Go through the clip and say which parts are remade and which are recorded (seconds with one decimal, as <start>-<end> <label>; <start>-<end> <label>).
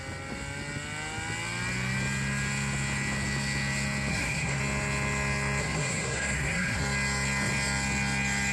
0.0-4.1 recorded; 4.1-4.6 remade; 4.6-5.6 recorded; 5.6-6.8 remade; 6.8-8.5 recorded